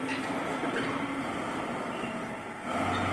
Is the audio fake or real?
real